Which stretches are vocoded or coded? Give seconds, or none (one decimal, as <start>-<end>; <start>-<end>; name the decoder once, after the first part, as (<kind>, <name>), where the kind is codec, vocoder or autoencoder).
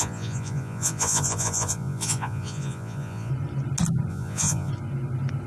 0.0-3.3 (vocoder, Vocos); 4.1-4.7